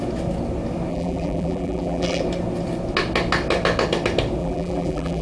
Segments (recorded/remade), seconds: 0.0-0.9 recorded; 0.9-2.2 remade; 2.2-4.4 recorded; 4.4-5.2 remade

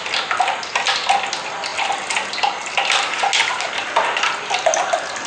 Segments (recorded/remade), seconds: 0.0-5.3 recorded

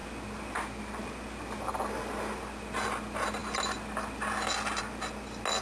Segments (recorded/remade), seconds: 0.0-5.6 recorded

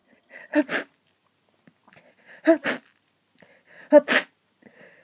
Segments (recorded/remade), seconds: 0.0-0.6 remade; 0.6-5.0 recorded

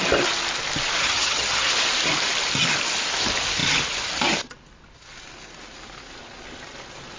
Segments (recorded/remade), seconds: 0.0-1.0 recorded; 1.0-1.7 remade; 1.7-7.2 recorded